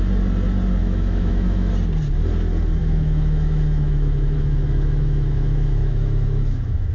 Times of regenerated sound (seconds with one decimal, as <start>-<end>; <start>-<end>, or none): 0.8-1.7; 2.8-6.9